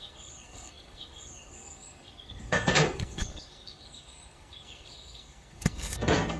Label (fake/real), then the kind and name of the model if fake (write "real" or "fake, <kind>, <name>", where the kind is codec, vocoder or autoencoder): fake, codec, SNAC